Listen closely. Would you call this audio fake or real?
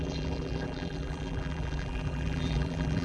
fake